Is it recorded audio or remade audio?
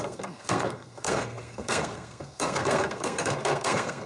remade